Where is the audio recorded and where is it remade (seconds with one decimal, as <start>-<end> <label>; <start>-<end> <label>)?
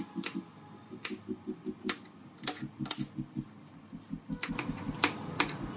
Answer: 0.0-5.8 recorded